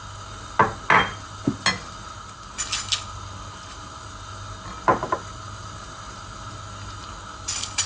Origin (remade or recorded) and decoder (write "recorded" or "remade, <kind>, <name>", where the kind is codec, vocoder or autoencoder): recorded